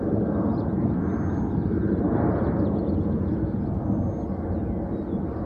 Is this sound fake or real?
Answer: real